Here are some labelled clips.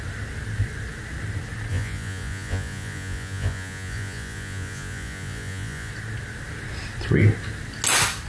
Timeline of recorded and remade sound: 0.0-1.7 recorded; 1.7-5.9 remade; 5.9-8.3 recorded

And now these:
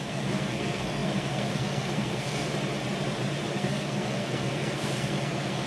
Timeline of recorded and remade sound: 0.0-2.5 remade; 2.5-3.5 recorded; 3.5-5.7 remade

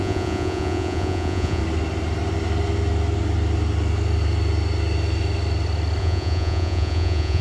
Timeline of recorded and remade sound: 0.0-1.6 remade; 1.6-6.0 recorded; 6.0-7.4 remade

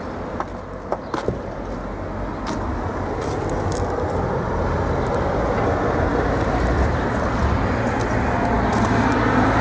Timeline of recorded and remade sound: 0.0-9.6 recorded

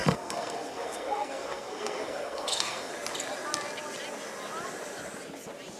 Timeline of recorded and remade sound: 0.0-2.9 remade; 2.9-5.8 recorded

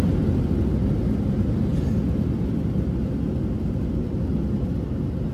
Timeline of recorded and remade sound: 0.0-5.3 recorded

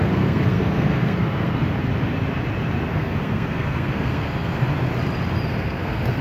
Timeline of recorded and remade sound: 0.0-1.6 remade; 1.6-2.9 recorded; 2.9-4.7 remade; 4.7-5.5 recorded; 5.5-6.2 remade

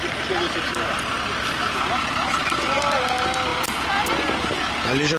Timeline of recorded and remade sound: 0.0-5.2 recorded